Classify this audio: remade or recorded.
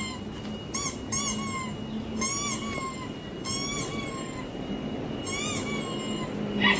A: recorded